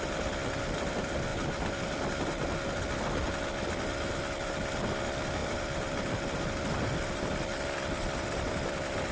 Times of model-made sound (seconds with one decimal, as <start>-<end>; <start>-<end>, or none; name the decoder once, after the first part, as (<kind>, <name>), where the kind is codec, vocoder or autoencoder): 1.3-2.5 (vocoder, BigVGAN v2); 5.4-9.1